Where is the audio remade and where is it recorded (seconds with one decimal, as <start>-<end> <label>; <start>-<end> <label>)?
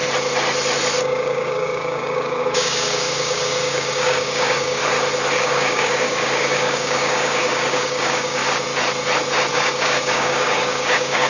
0.0-1.0 recorded; 1.0-4.8 remade; 4.8-5.4 recorded; 5.4-8.4 remade; 8.4-9.5 recorded; 9.5-11.3 remade